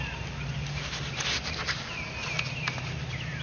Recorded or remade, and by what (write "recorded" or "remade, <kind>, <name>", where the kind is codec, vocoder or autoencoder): recorded